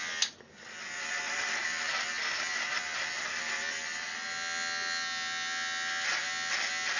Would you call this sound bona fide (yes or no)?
yes